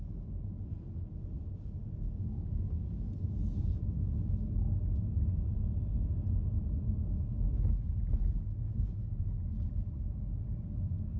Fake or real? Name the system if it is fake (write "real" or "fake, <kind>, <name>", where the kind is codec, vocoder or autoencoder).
real